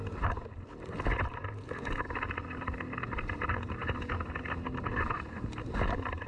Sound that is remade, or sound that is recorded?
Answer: recorded